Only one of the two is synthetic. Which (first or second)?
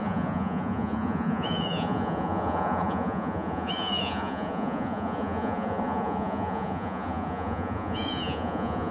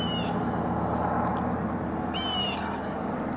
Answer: first